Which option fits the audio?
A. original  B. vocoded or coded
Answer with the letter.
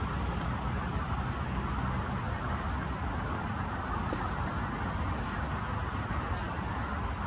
A